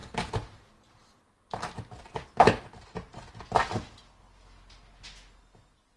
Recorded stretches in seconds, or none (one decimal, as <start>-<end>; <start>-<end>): 0.0-6.0